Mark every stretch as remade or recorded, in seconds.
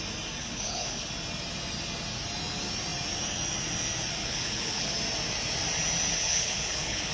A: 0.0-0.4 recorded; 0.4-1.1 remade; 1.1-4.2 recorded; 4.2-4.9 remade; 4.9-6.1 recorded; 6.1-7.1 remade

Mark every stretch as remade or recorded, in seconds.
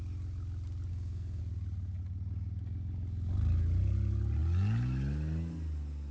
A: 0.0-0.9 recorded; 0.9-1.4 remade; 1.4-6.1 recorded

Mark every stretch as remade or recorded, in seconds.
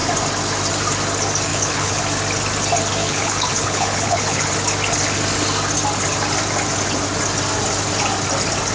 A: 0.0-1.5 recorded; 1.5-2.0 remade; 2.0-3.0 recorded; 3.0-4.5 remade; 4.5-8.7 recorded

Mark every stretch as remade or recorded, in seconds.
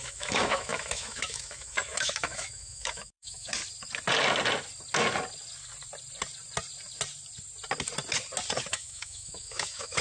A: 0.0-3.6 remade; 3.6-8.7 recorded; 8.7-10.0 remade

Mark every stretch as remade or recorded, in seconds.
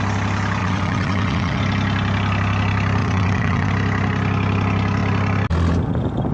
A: 0.0-0.6 recorded; 0.6-1.6 remade; 1.6-3.0 recorded; 3.0-3.7 remade; 3.7-6.3 recorded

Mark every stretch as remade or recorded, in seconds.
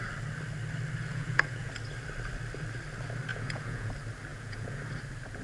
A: 0.0-1.1 recorded; 1.1-1.7 remade; 1.7-3.3 recorded; 3.3-3.9 remade; 3.9-4.3 recorded; 4.3-4.8 remade; 4.8-5.4 recorded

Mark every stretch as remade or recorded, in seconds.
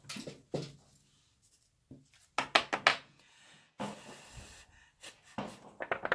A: 0.0-2.9 recorded; 2.9-3.8 remade; 3.8-6.1 recorded